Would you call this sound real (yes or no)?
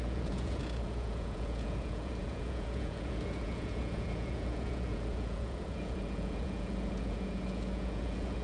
no